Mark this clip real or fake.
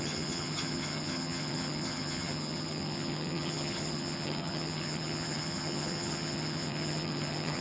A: fake